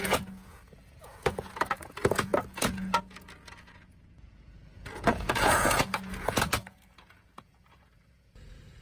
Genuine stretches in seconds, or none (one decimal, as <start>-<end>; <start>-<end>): none